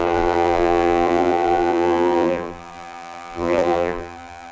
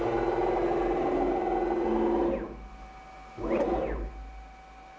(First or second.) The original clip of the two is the second